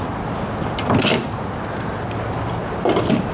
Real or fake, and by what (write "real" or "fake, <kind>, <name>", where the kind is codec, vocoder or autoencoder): real